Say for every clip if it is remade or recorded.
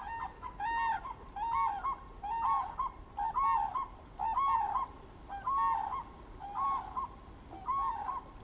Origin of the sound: recorded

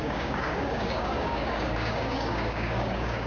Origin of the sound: remade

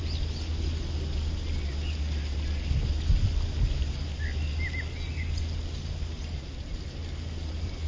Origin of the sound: recorded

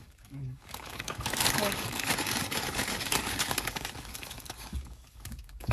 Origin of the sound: remade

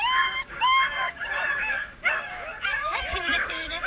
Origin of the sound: remade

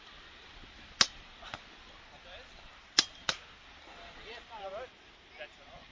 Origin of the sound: recorded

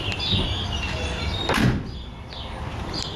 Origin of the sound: recorded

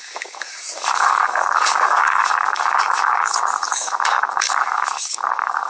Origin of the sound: remade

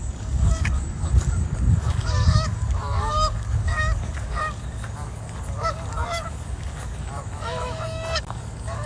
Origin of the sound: remade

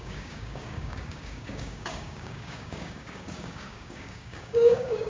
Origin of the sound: remade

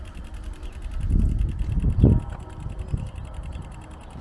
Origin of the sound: recorded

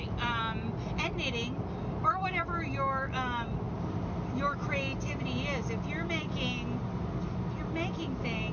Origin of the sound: recorded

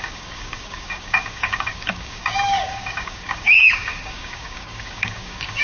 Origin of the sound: remade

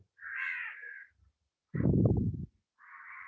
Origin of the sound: recorded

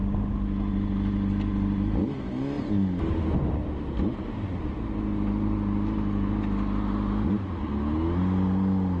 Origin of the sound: recorded